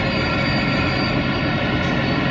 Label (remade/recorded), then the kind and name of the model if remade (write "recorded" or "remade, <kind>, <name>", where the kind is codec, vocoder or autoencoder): recorded